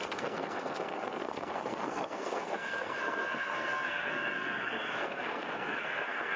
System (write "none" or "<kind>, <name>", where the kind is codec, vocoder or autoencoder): codec, SNAC